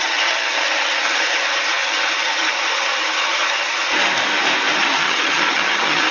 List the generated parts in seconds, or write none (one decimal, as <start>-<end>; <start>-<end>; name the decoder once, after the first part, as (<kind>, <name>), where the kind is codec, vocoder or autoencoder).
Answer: 0.0-3.9 (vocoder, HiFi-GAN); 4.8-6.1